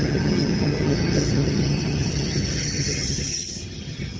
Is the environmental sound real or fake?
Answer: fake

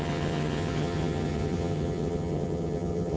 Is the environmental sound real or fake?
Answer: fake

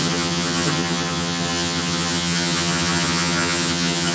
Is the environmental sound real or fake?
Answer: fake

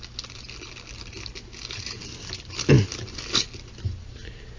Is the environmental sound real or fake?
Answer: real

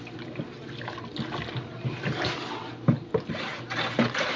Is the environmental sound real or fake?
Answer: real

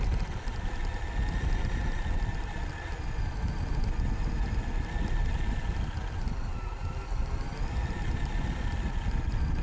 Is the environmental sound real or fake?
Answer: real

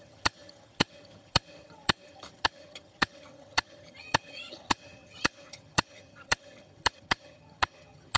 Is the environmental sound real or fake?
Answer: fake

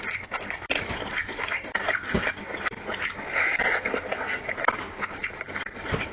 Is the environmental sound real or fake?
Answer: real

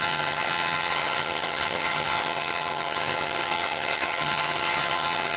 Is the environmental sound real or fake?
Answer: fake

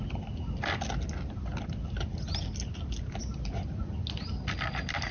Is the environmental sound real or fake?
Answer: real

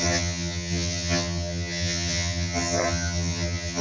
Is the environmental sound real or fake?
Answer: fake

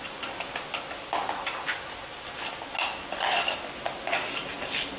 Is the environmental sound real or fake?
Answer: real